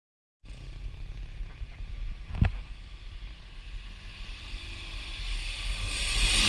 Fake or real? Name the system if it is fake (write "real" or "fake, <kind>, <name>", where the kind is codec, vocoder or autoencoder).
real